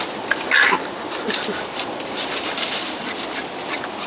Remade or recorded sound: recorded